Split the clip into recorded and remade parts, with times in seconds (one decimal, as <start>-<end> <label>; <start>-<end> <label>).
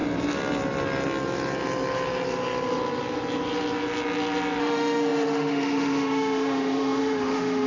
0.0-4.6 recorded; 4.6-7.7 remade